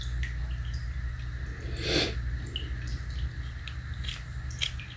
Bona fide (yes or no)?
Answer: yes